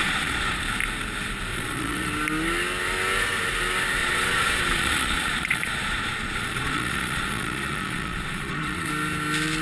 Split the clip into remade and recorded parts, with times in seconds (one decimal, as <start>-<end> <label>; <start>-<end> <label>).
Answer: 0.0-0.6 remade; 0.6-1.5 recorded; 1.5-2.1 remade; 2.1-4.0 recorded; 4.0-8.9 remade; 8.9-9.6 recorded